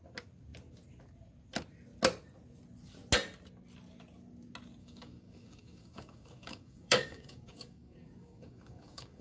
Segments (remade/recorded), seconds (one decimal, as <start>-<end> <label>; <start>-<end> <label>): 0.0-4.8 recorded; 4.8-9.2 remade